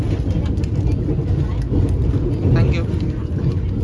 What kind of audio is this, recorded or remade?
recorded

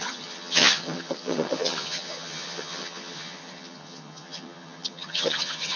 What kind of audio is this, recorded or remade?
remade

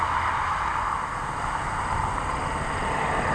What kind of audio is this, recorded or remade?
recorded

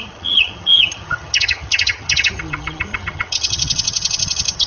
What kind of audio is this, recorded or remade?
remade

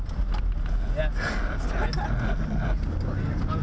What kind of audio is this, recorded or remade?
recorded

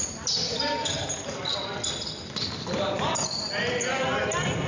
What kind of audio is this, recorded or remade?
recorded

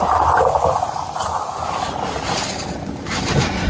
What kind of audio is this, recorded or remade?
recorded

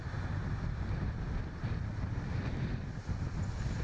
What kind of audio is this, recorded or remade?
recorded